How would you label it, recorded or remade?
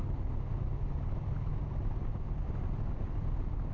recorded